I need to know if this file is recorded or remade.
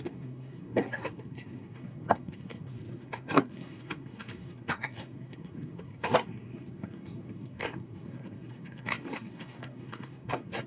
remade